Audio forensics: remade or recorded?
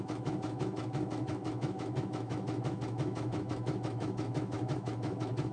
remade